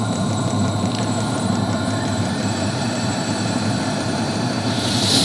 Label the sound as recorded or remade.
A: remade